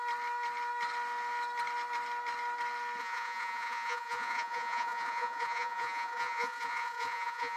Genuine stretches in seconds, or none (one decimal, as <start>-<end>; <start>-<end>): 0.0-3.0

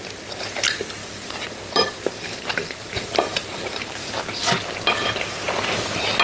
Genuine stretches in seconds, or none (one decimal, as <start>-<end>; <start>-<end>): 0.0-1.0; 4.4-6.2

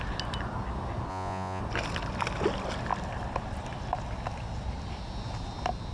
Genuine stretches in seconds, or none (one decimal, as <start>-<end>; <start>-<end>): 0.0-1.1; 1.6-5.9

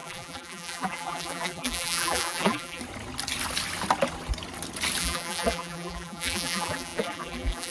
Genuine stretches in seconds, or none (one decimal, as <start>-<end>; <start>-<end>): 2.8-5.0

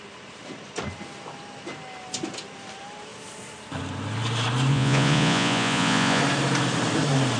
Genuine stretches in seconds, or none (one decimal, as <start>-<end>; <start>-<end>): 0.0-4.7; 6.2-7.4